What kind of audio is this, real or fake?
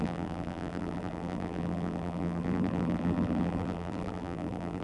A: fake